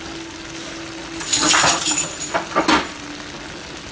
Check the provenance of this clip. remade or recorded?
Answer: recorded